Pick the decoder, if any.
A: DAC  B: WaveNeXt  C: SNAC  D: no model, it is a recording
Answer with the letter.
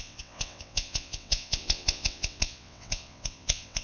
B